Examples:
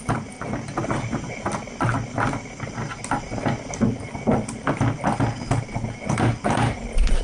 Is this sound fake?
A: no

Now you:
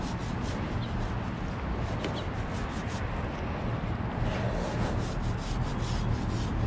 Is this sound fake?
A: no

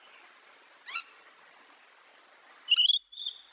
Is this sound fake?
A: no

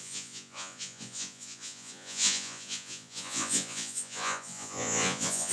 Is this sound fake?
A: yes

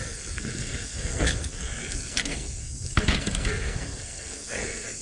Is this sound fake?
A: yes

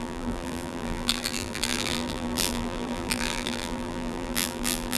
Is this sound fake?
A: yes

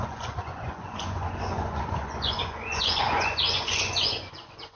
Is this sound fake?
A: yes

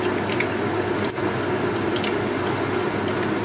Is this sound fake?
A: no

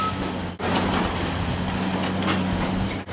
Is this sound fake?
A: no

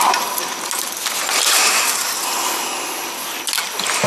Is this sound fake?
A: no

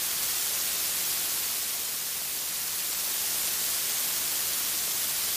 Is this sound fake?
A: no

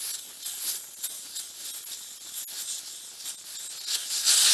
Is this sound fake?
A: no